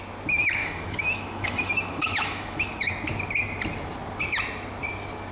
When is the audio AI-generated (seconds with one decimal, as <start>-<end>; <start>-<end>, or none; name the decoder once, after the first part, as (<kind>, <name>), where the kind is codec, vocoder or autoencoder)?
0.6-2.9 (autoencoder, DAC-VAE)